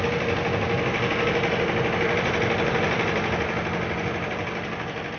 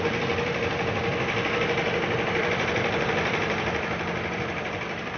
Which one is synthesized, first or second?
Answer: second